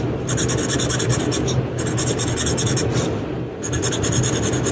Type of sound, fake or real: real